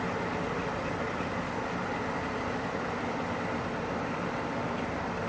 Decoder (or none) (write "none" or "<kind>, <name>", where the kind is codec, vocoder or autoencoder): none